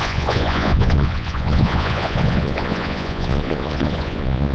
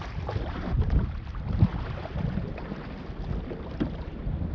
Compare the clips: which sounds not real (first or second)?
first